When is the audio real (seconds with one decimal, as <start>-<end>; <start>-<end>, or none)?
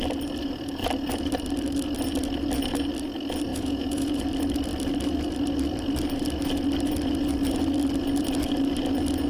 0.0-3.5; 4.2-9.3